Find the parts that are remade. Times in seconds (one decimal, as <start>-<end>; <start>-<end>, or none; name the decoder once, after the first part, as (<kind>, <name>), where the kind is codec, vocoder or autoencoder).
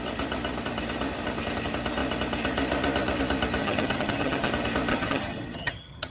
3.6-4.5 (vocoder, HiFi-GAN); 4.9-6.1